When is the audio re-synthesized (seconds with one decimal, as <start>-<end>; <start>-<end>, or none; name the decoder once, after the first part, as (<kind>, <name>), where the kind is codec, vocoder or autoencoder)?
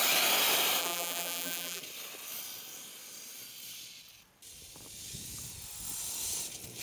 0.8-1.8 (vocoder, BigVGAN v2)